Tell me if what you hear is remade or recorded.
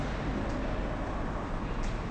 recorded